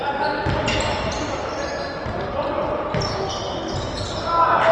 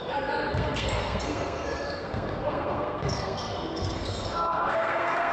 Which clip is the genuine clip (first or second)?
first